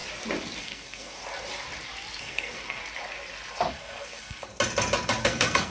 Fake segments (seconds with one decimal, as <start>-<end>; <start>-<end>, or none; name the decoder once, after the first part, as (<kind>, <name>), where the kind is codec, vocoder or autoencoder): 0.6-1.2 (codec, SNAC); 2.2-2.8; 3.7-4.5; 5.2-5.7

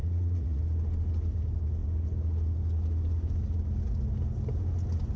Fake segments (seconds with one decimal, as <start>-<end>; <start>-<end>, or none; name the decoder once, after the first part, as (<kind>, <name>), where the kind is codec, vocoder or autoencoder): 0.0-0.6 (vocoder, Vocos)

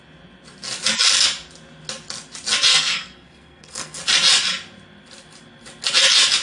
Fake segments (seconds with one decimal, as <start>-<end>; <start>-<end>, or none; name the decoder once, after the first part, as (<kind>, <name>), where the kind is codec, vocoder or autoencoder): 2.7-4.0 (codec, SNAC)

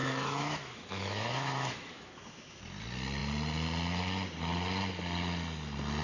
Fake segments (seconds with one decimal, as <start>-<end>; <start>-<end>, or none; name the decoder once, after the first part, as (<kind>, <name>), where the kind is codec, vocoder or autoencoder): 0.0-2.6 (autoencoder, DAC-VAE)

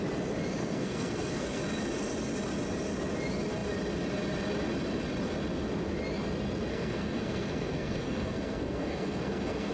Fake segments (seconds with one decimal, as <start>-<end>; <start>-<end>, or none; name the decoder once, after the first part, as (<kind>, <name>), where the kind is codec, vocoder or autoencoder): 0.6-1.6 (codec, SNAC); 6.7-9.7

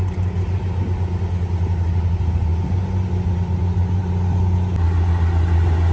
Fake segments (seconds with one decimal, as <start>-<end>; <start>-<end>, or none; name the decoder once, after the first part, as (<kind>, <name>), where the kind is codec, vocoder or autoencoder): none

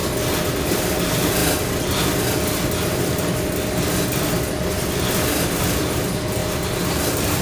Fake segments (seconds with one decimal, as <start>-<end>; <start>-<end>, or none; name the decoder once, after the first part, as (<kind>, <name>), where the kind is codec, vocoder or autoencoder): 0.7-1.4 (vocoder, BigVGAN v2); 5.6-6.4; 6.9-7.4